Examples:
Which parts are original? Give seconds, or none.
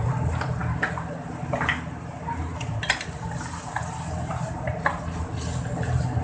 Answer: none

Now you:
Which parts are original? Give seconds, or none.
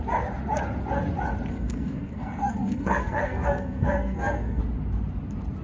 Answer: 0.0-1.5; 4.6-5.6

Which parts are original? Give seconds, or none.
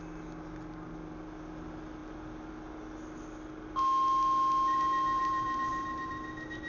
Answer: 0.0-5.2; 6.1-6.7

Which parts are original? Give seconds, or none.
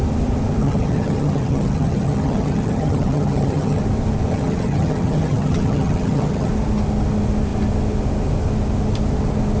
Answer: 0.0-0.6; 3.8-4.3; 6.5-9.6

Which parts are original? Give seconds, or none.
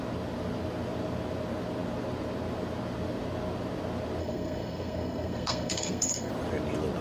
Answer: 0.0-4.2; 6.3-7.0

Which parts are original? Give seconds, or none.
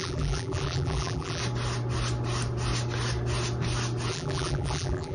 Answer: 1.4-4.1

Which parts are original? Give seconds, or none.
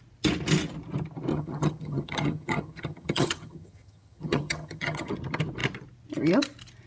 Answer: 0.0-1.3; 5.1-6.9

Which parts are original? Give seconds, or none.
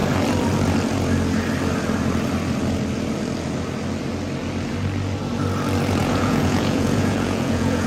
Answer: 0.0-6.0